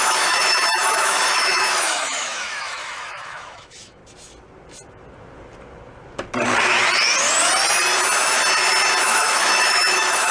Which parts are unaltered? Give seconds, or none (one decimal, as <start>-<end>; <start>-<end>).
4.0-9.0